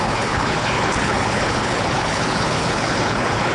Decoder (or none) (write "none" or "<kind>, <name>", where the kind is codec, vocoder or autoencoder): codec, HILCodec